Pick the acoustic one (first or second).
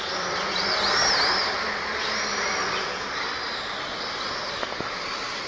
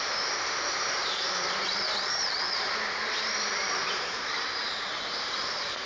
first